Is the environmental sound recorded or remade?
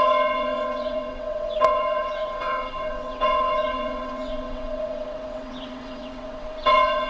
remade